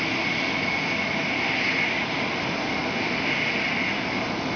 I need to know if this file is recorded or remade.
recorded